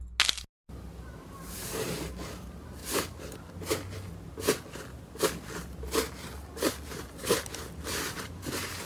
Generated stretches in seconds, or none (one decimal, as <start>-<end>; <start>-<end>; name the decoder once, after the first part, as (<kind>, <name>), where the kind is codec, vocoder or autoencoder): none